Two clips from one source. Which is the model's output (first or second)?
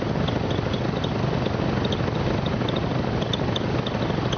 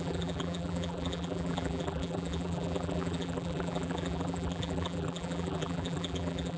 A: second